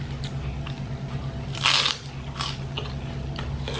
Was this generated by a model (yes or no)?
no